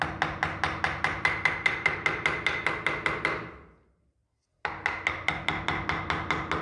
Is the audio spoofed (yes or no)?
no